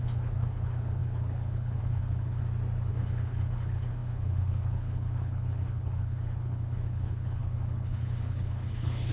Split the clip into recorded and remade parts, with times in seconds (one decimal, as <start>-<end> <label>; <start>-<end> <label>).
0.0-2.4 remade; 2.4-2.9 recorded; 2.9-9.1 remade